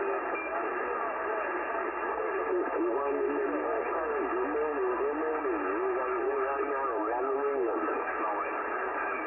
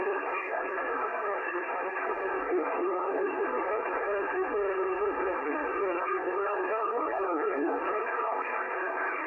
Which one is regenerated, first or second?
second